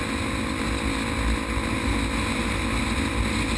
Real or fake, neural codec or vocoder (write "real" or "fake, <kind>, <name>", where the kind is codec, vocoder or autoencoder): real